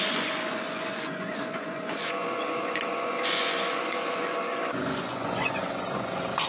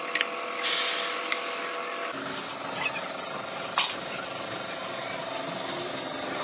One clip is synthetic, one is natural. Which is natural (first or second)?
second